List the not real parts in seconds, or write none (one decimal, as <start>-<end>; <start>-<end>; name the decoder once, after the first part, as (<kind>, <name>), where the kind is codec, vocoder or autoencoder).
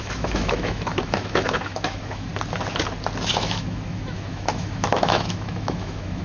0.0-2.3 (autoencoder, DAC-VAE); 3.3-6.2